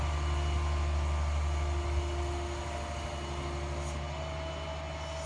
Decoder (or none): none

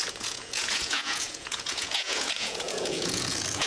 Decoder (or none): vocoder, Vocos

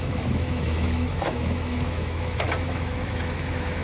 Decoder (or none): autoencoder, DAC-VAE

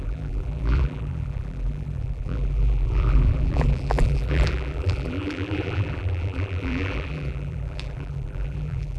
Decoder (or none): vocoder, BigVGAN v2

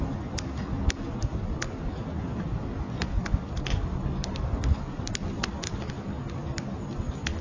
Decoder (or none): none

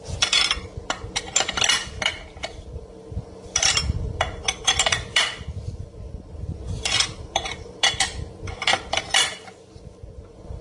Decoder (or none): vocoder, BigVGAN v2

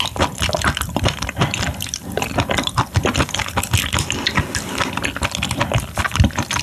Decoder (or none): none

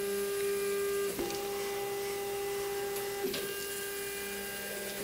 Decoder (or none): none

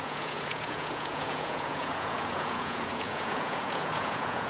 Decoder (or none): vocoder, Vocos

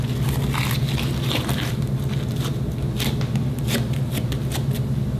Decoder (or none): none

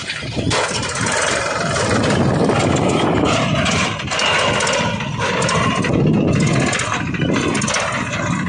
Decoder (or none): none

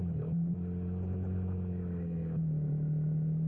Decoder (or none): none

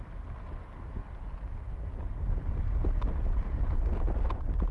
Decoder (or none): none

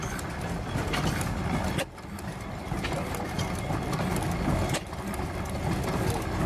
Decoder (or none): none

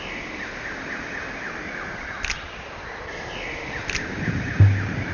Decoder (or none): none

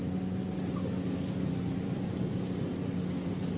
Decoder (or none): vocoder, BigVGAN v2